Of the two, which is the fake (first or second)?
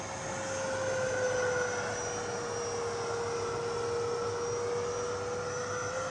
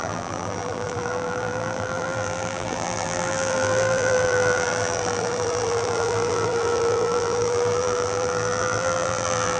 second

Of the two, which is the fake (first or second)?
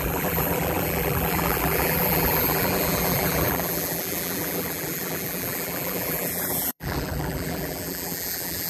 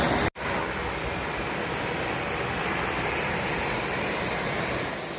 first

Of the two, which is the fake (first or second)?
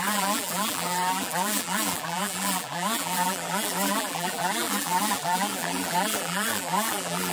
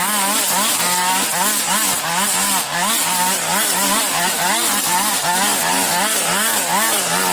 first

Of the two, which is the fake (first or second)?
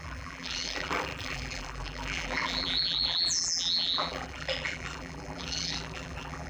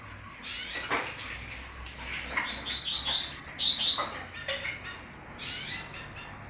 first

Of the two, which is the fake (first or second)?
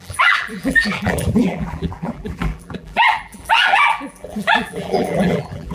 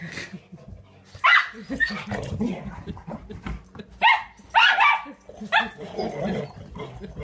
first